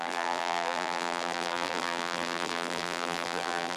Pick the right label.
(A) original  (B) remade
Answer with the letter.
B